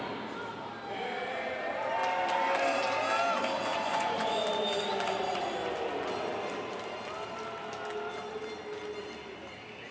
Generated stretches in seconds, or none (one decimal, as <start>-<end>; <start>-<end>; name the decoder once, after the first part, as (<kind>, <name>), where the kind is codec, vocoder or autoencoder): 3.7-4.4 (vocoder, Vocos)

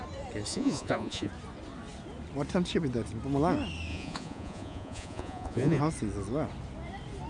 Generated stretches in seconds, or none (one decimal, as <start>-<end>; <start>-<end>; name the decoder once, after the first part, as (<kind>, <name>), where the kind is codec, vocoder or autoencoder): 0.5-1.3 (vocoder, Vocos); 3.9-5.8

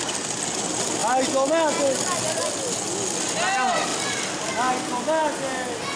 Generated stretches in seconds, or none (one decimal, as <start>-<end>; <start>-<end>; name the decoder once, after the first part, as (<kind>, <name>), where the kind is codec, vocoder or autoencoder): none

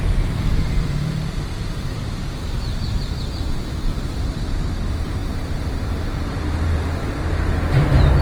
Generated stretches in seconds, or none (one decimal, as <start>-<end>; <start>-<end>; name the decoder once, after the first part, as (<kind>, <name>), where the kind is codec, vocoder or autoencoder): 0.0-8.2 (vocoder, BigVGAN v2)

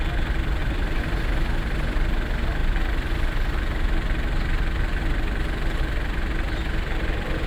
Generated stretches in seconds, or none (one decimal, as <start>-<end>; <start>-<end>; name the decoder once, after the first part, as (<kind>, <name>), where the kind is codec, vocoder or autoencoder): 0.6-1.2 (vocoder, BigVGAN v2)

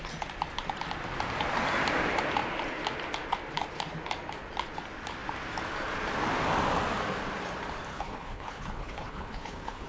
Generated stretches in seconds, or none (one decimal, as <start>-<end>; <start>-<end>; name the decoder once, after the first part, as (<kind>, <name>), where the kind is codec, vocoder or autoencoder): 7.9-9.9 (codec, HILCodec)